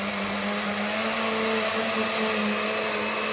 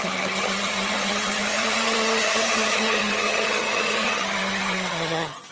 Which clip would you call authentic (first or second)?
first